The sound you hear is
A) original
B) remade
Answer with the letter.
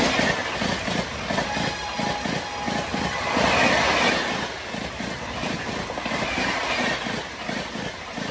A